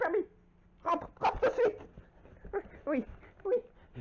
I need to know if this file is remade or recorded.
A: recorded